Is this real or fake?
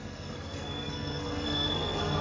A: fake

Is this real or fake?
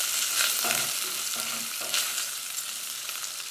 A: real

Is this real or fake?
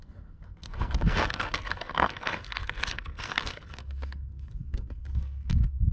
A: fake